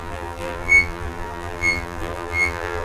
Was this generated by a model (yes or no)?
yes